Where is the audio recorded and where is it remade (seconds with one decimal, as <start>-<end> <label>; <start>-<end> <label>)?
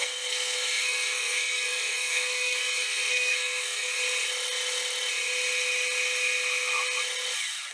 0.0-4.0 remade; 4.0-7.7 recorded